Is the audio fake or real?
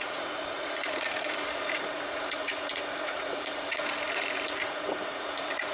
fake